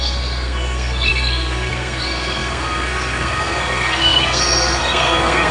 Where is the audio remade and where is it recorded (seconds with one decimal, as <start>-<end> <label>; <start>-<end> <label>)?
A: 0.0-5.5 remade